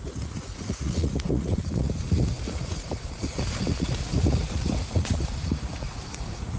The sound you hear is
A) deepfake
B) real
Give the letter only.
A